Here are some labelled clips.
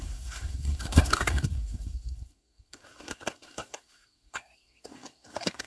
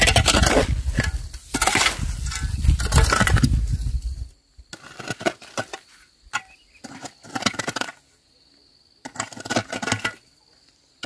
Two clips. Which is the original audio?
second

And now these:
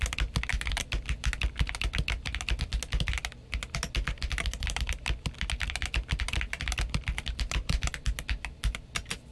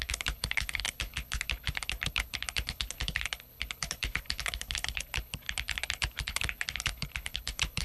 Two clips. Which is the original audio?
first